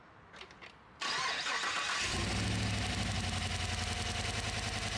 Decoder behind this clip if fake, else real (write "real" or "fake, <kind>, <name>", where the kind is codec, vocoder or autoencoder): real